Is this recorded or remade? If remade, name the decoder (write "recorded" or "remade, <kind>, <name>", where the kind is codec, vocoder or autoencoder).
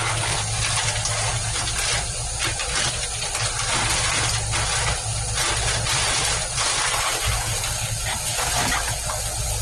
recorded